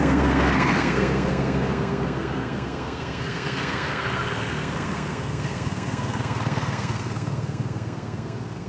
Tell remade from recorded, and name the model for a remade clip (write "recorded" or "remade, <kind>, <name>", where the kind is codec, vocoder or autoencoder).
remade, codec, SNAC